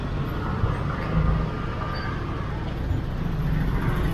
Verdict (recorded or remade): recorded